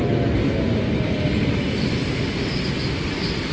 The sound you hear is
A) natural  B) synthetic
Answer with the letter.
A